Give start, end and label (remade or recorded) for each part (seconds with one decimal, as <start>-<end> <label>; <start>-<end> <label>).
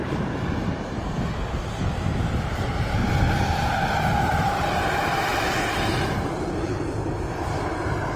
0.0-1.0 remade; 1.0-2.1 recorded; 2.1-3.0 remade; 3.0-4.1 recorded; 4.1-5.3 remade; 5.3-6.1 recorded; 6.1-8.2 remade